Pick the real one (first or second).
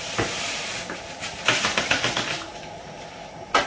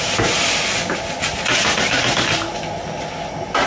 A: second